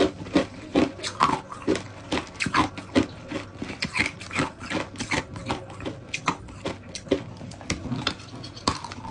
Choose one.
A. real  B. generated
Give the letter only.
A